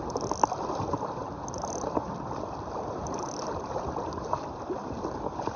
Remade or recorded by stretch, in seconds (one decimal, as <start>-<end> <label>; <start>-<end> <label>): 0.0-5.6 recorded